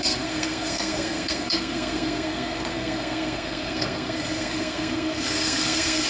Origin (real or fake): fake